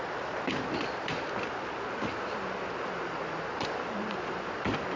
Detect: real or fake real